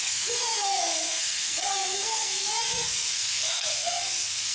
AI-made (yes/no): yes